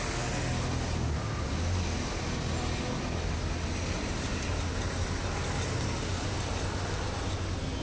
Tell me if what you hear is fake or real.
real